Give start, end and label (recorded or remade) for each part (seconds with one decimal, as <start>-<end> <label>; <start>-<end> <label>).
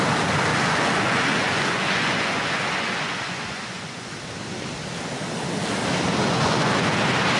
0.0-0.5 recorded; 0.5-4.1 remade; 4.1-6.2 recorded; 6.2-7.0 remade; 7.0-7.4 recorded